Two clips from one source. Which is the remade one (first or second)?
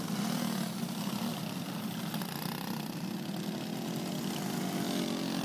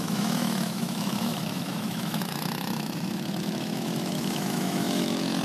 second